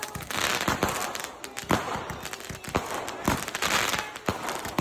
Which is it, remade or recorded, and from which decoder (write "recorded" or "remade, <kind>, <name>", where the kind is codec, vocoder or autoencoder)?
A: recorded